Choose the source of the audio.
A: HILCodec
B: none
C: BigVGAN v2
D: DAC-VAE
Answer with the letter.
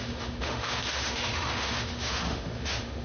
D